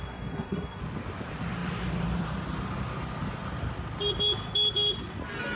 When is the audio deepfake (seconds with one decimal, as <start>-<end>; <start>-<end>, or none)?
0.0-0.8